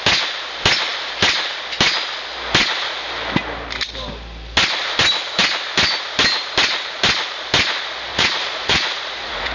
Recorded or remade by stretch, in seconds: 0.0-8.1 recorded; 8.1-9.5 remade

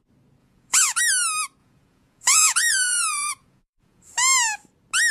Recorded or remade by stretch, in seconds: 0.0-0.4 recorded; 0.4-1.0 remade; 1.0-1.6 recorded; 1.6-4.1 remade; 4.1-5.1 recorded

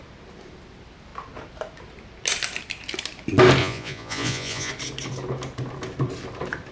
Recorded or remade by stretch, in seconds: 0.0-3.6 recorded; 3.6-4.7 remade; 4.7-6.7 recorded

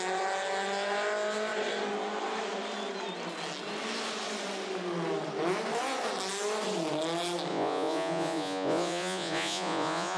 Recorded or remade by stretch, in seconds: 0.0-7.5 recorded; 7.5-10.2 remade